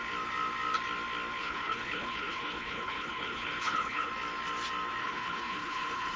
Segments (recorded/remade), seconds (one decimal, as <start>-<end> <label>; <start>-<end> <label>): 0.0-1.4 recorded; 1.4-4.1 remade; 4.1-5.0 recorded; 5.0-6.2 remade

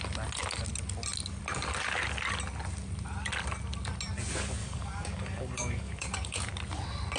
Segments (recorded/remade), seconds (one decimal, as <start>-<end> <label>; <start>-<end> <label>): 0.0-4.6 recorded; 4.6-6.5 remade; 6.5-7.2 recorded

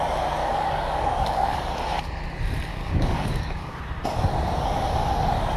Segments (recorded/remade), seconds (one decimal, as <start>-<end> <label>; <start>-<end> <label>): 0.0-0.4 recorded; 0.4-1.6 remade; 1.6-2.7 recorded; 2.7-3.8 remade; 3.8-5.6 recorded

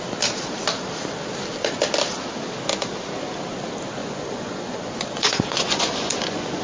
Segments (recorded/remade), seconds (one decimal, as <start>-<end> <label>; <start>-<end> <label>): 0.0-4.0 recorded; 4.0-6.6 remade